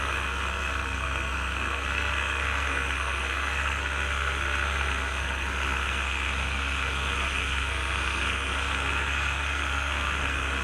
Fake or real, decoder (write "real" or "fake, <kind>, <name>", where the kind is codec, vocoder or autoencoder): fake, codec, SNAC